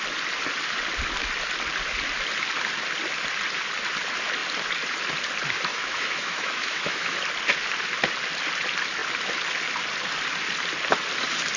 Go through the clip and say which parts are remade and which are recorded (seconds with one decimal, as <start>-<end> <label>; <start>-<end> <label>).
0.0-5.7 recorded; 5.7-7.2 remade; 7.2-11.6 recorded